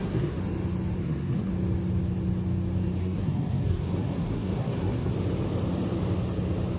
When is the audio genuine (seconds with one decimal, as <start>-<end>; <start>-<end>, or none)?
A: 0.4-1.0; 1.5-3.0; 5.1-6.8